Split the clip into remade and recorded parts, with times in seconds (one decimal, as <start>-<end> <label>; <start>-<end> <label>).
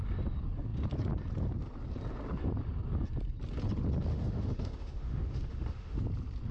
0.0-4.1 recorded; 4.1-6.0 remade; 6.0-6.5 recorded